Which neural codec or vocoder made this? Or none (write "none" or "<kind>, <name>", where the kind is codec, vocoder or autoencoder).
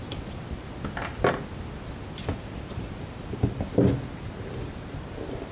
none